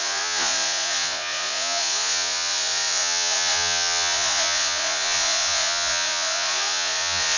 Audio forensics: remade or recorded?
remade